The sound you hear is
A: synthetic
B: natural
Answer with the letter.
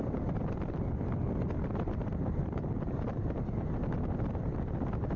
B